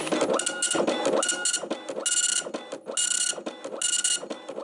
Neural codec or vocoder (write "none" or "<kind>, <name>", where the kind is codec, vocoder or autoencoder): none